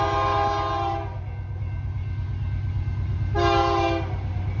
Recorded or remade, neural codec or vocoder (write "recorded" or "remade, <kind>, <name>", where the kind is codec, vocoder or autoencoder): recorded